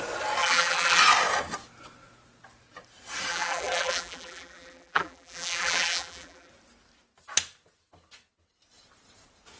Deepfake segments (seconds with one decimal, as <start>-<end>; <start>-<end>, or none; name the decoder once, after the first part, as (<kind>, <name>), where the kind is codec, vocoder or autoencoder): 0.4-1.0 (vocoder, BigVGAN v2); 3.3-6.5